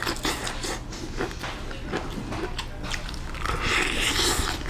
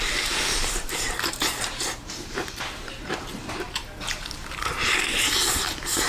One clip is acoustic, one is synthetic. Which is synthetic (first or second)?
second